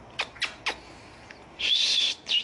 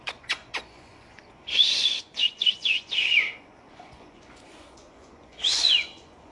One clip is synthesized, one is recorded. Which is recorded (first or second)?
first